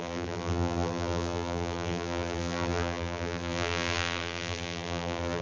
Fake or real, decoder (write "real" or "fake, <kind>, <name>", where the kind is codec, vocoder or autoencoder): fake, vocoder, BigVGAN v2